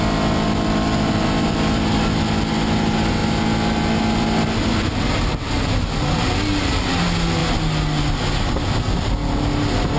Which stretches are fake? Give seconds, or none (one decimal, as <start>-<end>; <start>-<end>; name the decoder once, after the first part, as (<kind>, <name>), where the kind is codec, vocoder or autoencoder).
none